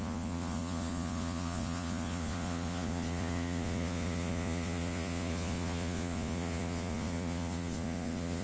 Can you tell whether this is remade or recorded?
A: remade